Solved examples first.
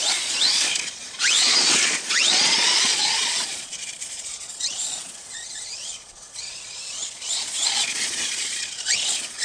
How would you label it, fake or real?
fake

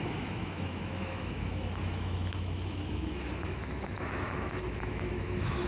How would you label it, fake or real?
fake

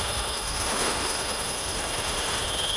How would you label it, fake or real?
fake